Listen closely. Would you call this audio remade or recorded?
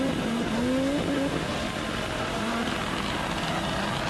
recorded